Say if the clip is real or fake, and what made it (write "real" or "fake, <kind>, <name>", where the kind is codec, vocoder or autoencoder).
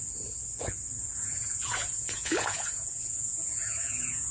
fake, vocoder, Vocos